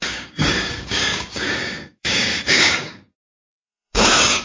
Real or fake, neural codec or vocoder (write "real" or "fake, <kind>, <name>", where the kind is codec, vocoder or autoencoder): fake, codec, DAC